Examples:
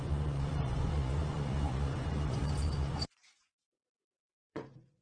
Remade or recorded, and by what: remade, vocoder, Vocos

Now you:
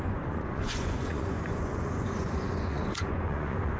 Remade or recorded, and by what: remade, vocoder, Vocos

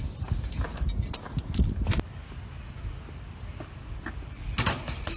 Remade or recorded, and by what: recorded